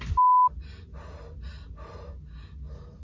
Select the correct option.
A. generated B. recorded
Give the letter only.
B